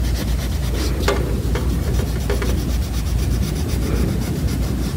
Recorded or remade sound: recorded